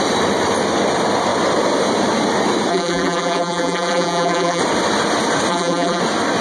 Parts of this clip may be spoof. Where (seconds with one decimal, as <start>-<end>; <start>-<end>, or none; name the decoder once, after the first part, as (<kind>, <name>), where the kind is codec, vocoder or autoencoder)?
2.7-4.6 (vocoder, BigVGAN v2); 5.5-6.0